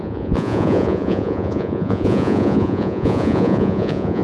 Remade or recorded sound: remade